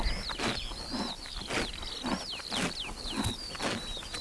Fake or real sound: real